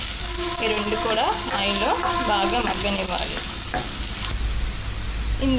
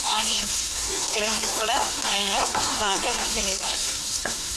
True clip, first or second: first